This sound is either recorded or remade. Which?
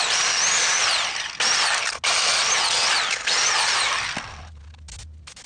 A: recorded